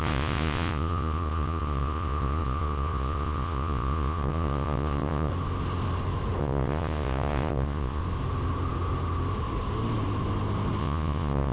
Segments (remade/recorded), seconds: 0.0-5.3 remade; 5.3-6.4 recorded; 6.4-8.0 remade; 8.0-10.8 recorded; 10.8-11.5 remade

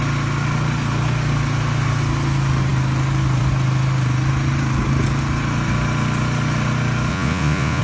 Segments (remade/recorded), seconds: 0.0-7.1 recorded; 7.1-7.8 remade